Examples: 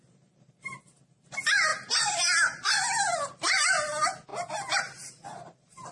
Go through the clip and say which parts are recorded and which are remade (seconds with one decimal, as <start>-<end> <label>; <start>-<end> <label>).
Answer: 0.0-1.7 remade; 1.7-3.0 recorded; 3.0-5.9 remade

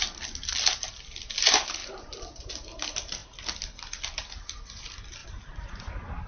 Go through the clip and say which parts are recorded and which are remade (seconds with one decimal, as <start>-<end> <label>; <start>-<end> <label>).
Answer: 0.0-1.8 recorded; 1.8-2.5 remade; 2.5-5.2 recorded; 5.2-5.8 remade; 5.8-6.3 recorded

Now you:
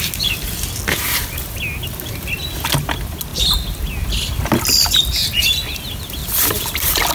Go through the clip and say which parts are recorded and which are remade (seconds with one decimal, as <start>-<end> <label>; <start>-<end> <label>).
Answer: 0.0-7.1 recorded

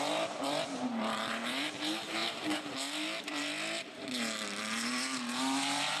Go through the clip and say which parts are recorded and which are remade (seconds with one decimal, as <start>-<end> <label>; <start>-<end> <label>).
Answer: 0.0-6.0 remade

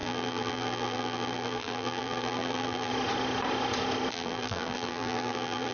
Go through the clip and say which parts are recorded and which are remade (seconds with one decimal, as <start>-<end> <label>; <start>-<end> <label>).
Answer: 0.0-2.9 remade; 2.9-4.1 recorded; 4.1-5.7 remade

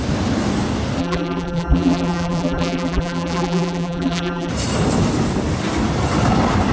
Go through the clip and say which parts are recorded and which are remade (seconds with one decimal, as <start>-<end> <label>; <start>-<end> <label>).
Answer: 0.0-1.0 recorded; 1.0-4.5 remade; 4.5-6.7 recorded

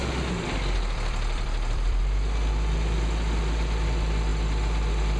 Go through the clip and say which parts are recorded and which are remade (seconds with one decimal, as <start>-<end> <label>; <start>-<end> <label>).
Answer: 0.0-2.0 remade; 2.0-5.2 recorded